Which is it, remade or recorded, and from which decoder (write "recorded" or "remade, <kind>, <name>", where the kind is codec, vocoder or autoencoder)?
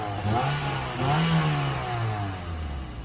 recorded